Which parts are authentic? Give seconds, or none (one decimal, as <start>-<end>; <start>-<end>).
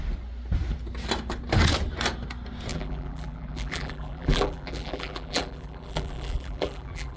0.0-2.7